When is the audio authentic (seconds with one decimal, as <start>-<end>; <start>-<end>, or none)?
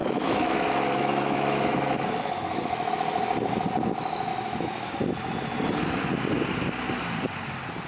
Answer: 2.9-4.3; 4.9-7.9